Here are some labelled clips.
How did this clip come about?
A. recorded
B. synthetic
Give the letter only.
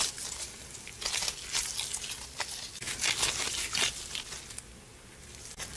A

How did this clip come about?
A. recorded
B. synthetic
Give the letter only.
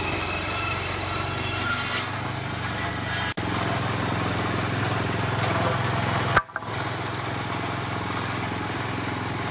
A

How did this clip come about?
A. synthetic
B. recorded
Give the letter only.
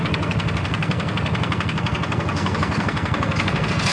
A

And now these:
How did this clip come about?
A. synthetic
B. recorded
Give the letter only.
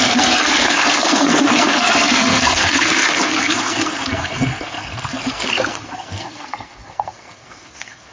A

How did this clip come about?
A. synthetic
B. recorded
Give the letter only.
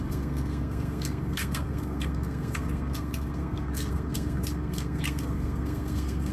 A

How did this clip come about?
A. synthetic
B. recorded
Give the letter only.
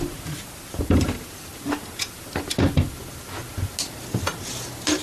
B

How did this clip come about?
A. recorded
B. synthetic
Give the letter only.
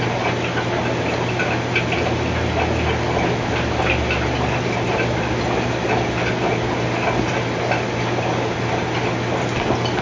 A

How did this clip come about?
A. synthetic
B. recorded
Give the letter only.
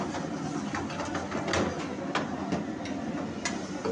B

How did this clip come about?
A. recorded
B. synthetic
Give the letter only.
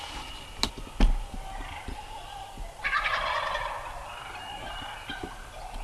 A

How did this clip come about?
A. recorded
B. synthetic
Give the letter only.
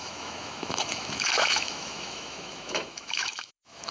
B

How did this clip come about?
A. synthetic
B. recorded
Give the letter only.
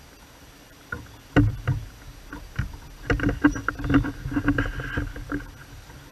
B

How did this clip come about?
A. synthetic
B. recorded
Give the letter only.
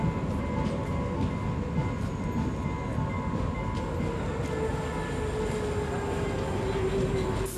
B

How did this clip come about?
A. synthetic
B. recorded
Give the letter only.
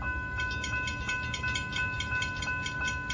B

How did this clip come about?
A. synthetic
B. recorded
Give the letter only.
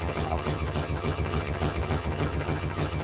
A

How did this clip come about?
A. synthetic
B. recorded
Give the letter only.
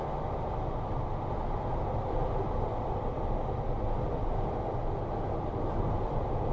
B